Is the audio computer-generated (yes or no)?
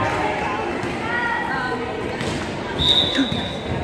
no